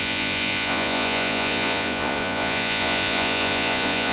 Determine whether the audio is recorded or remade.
remade